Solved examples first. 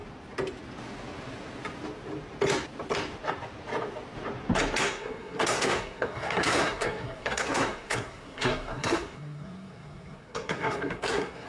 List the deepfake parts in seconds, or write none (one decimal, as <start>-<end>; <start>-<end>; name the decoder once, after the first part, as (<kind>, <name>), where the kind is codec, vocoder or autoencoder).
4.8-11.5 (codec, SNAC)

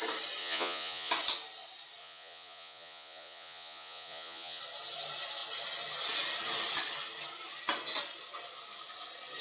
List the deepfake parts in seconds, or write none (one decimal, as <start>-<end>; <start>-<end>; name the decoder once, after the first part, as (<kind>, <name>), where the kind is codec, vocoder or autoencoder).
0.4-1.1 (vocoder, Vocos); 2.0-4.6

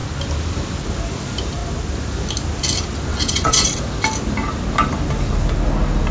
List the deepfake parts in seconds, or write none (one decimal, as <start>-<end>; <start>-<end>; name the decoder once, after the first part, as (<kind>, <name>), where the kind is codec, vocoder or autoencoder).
3.1-3.8 (vocoder, WaveNeXt)

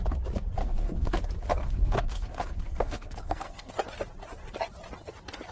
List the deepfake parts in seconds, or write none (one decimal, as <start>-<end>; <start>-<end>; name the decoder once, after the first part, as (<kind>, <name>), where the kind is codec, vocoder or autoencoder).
0.6-1.2 (codec, SNAC); 1.6-3.7